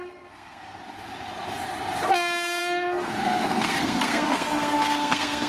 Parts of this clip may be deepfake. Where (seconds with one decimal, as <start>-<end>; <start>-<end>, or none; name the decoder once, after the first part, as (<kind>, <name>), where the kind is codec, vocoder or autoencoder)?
0.0-0.8 (codec, SNAC); 2.6-5.5